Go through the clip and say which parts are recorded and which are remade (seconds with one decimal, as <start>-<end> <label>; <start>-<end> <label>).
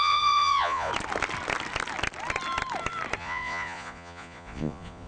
0.0-0.9 remade; 0.9-3.2 recorded; 3.2-5.1 remade